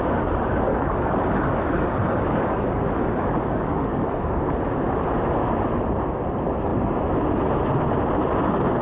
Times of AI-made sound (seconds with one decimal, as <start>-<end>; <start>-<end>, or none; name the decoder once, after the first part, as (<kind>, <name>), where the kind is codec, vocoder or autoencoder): 0.7-4.4 (codec, DAC)